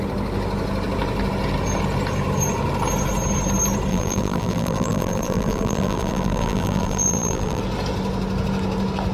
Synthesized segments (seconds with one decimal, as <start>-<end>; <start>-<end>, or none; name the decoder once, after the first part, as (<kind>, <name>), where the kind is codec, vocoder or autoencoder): 3.9-7.6 (vocoder, BigVGAN v2)